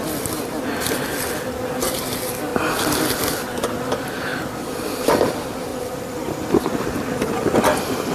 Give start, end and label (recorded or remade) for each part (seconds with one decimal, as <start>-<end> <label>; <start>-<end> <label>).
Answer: 0.0-8.1 recorded